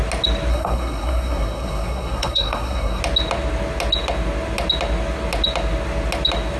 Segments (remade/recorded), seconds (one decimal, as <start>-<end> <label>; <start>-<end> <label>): 0.0-0.5 recorded; 0.5-3.0 remade; 3.0-6.6 recorded